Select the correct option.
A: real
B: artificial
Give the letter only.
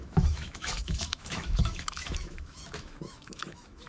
B